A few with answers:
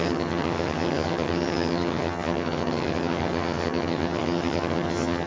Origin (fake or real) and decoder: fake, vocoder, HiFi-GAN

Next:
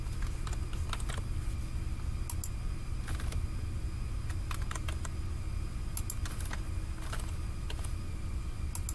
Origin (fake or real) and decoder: real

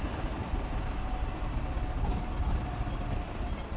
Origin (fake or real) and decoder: real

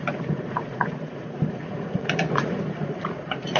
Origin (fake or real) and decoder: fake, vocoder, Vocos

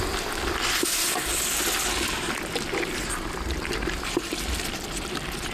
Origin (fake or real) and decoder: real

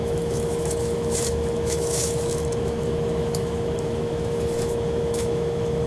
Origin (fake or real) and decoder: fake, autoencoder, DAC-VAE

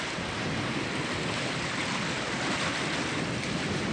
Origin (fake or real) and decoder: real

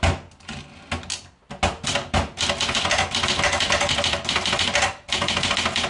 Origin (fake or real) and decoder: real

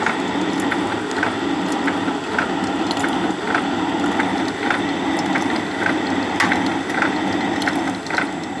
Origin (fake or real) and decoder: real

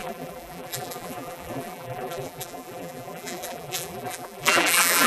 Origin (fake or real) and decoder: fake, vocoder, BigVGAN v2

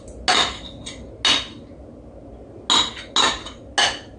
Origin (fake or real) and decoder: real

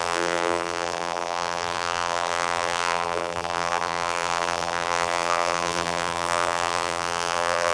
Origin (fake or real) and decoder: fake, vocoder, BigVGAN v2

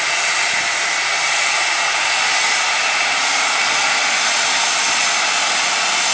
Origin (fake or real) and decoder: real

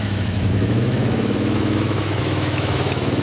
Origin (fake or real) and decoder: fake, autoencoder, DAC-VAE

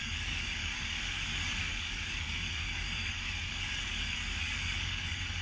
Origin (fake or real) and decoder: fake, codec, DAC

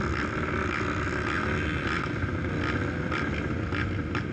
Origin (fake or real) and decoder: real